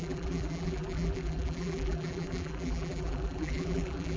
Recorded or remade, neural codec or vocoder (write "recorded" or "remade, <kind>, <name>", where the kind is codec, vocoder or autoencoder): remade, vocoder, BigVGAN v2